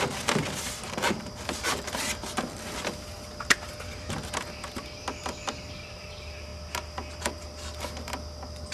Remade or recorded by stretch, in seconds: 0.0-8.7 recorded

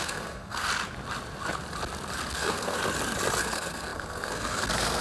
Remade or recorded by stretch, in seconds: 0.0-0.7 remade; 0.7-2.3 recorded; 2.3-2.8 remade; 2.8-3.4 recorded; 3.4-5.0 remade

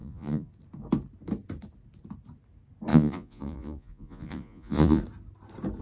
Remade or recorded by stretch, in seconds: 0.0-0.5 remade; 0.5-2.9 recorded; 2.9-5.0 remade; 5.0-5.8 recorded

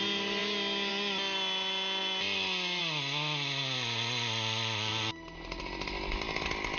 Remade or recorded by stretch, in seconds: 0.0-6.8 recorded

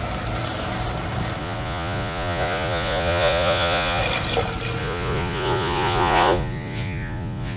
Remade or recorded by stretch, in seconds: 0.0-1.4 recorded; 1.4-4.0 remade; 4.0-4.8 recorded; 4.8-7.6 remade